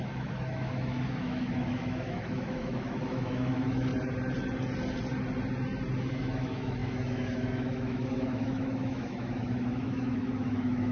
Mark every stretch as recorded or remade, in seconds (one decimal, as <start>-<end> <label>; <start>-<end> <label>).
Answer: 0.0-3.9 remade; 3.9-6.2 recorded; 6.2-10.9 remade